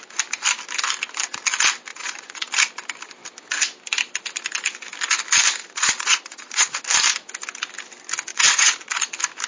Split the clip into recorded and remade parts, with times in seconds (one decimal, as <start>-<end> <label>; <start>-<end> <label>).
0.0-1.9 recorded; 1.9-2.5 remade; 2.5-5.6 recorded; 5.6-6.8 remade; 6.8-8.3 recorded; 8.3-8.9 remade; 8.9-9.5 recorded